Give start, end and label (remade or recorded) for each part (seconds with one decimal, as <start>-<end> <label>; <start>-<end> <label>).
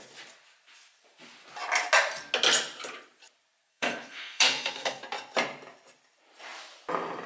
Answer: 0.0-3.7 recorded; 3.7-5.0 remade; 5.0-7.3 recorded